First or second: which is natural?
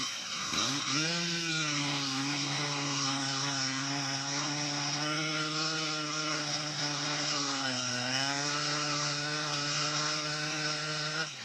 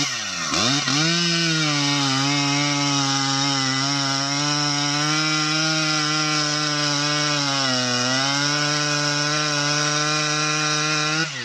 second